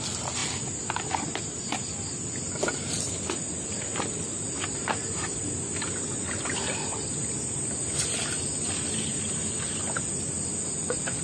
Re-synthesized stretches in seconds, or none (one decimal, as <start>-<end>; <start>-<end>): none